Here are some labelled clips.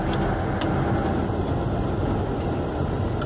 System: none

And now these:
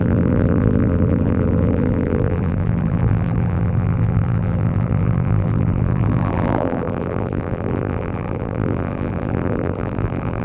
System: vocoder, BigVGAN v2